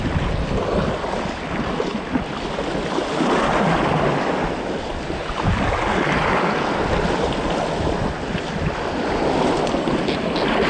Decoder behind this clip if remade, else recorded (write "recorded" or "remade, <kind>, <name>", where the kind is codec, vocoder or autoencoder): recorded